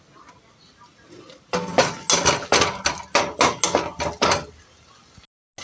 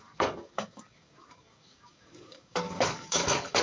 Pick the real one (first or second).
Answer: first